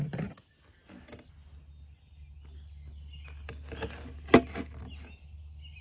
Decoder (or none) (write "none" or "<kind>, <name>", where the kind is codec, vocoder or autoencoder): none